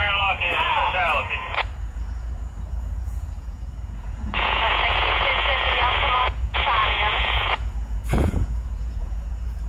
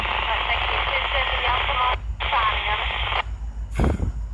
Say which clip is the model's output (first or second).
first